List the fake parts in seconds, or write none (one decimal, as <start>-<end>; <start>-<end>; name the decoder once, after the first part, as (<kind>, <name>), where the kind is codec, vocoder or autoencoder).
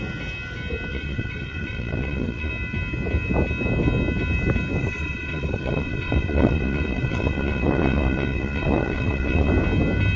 0.9-2.5 (vocoder, WaveNeXt); 4.8-9.5